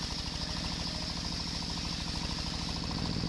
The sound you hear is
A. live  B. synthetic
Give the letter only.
A